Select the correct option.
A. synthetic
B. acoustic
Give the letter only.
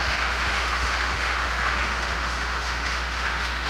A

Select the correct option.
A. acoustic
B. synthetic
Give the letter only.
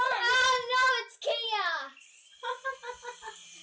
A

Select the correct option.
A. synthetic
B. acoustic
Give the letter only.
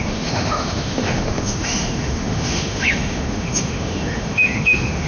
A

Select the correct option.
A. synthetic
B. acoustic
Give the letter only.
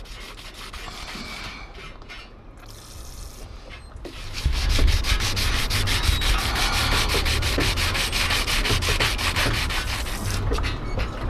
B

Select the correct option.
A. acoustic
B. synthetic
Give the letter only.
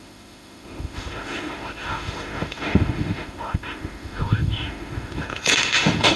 B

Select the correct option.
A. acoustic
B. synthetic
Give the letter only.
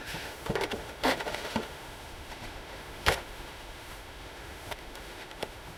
B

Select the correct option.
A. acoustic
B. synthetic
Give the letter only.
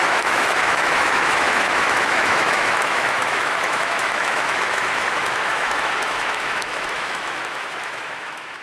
B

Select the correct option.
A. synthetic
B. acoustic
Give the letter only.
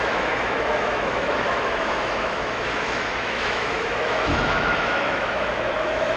A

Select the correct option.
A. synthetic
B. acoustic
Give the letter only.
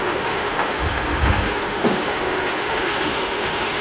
A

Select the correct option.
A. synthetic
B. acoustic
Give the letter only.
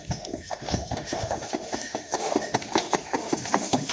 A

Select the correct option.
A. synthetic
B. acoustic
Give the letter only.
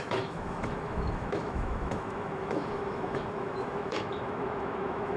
A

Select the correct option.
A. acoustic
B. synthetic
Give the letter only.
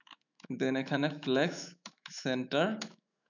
B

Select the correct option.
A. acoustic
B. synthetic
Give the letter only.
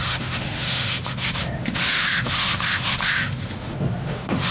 B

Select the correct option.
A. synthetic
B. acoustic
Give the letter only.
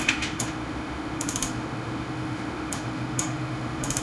A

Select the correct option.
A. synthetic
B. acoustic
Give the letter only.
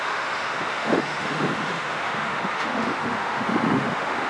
A